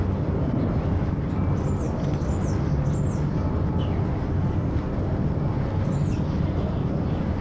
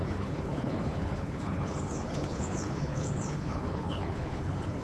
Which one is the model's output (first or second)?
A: second